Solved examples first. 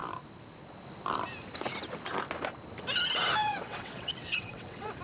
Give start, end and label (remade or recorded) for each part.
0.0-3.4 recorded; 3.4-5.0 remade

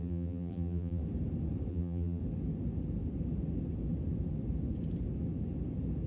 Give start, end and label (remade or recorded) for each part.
0.0-1.0 remade; 1.0-1.7 recorded; 1.7-2.2 remade; 2.2-6.1 recorded

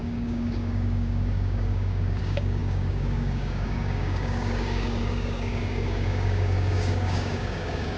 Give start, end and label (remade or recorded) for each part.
0.0-8.0 remade

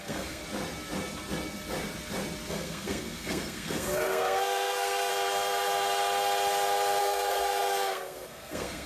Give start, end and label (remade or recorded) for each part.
0.0-0.4 remade; 0.4-2.5 recorded; 2.5-5.1 remade; 5.1-7.0 recorded; 7.0-8.9 remade

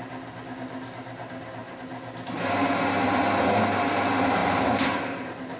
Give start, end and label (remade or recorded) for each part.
0.0-4.4 recorded; 4.4-5.0 remade; 5.0-5.6 recorded

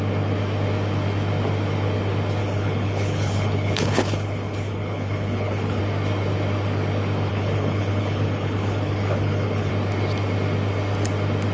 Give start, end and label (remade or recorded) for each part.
0.0-2.4 recorded; 2.4-5.8 remade; 5.8-7.3 recorded; 7.3-9.7 remade; 9.7-11.5 recorded